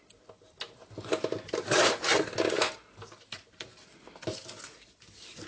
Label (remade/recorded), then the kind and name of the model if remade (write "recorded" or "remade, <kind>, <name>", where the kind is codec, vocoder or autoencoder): recorded